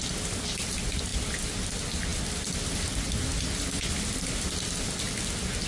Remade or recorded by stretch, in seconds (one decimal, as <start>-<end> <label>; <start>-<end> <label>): 0.0-5.7 recorded